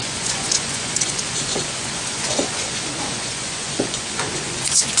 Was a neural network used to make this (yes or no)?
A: yes